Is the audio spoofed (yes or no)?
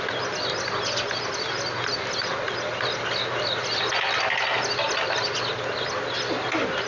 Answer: no